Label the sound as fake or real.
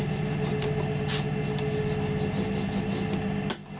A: real